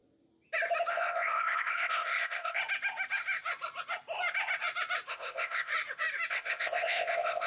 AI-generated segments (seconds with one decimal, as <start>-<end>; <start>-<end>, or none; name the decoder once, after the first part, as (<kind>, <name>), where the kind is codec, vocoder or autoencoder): 0.9-2.6 (codec, ZipCodec); 5.1-5.7; 6.3-7.5